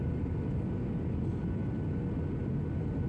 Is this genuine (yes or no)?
yes